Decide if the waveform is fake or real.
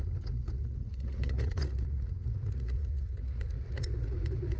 fake